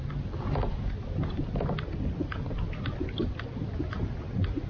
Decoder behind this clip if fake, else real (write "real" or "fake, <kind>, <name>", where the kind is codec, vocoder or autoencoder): real